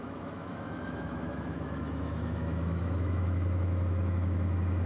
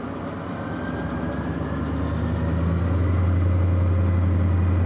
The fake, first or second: first